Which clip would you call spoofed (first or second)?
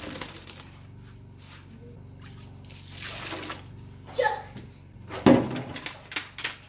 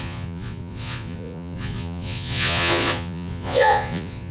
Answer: second